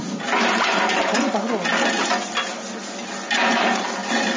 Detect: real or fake real